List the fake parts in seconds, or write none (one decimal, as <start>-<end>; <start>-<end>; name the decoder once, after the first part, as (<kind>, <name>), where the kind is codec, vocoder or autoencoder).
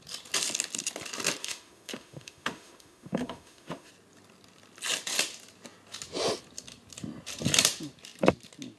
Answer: 1.4-3.9 (autoencoder, DAC-VAE)